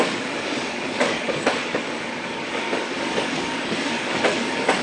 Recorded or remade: remade